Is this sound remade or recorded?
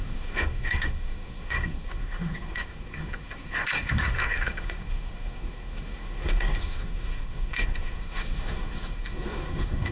remade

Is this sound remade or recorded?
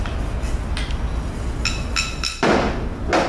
recorded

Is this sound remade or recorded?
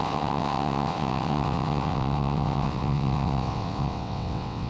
remade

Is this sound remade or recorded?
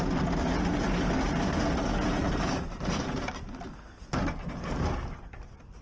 recorded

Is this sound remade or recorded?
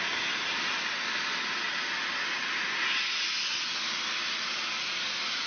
recorded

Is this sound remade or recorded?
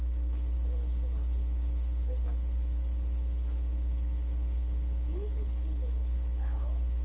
remade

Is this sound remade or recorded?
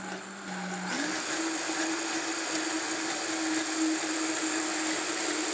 recorded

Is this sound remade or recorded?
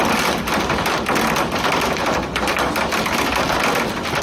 recorded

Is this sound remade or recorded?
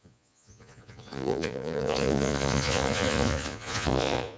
remade